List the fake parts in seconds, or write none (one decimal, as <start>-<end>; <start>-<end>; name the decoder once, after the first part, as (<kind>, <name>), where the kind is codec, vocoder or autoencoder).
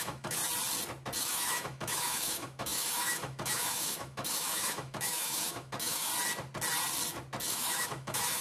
0.0-0.4 (autoencoder, DAC-VAE); 1.2-6.1; 7.5-8.4